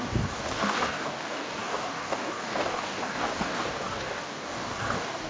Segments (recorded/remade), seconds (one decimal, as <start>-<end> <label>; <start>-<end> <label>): 0.0-5.3 remade